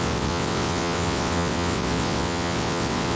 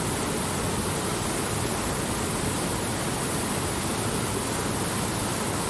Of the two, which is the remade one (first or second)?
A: first